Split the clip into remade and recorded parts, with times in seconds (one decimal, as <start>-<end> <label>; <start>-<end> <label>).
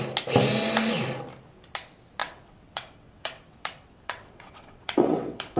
0.0-2.2 recorded; 2.2-5.6 remade